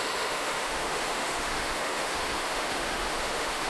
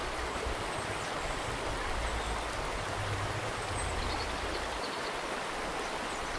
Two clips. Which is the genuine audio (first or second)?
second